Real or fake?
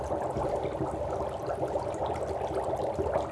real